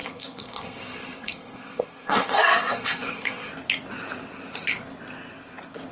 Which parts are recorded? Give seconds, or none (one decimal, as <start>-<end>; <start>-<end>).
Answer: 3.5-5.9

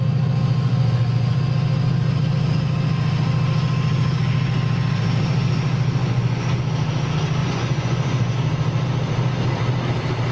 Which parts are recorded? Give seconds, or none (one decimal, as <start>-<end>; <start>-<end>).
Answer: 0.0-0.7; 1.4-6.0; 6.6-7.4; 8.4-10.3

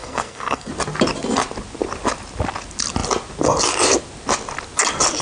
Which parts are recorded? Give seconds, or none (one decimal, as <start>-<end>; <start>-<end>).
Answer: 0.7-5.2

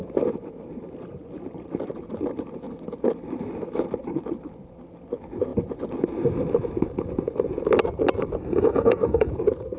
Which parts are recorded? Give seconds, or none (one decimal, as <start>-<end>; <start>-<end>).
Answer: 0.0-8.4; 9.3-9.8

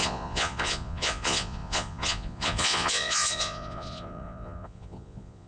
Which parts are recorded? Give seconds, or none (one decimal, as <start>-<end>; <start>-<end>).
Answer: none